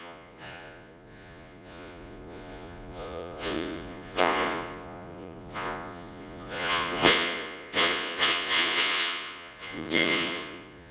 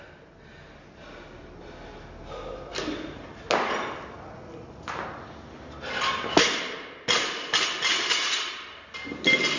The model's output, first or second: first